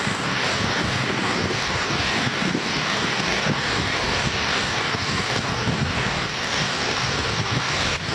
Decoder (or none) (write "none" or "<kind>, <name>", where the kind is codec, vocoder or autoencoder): codec, DAC